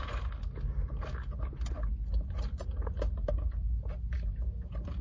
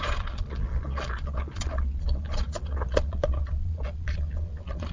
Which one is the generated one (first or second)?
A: second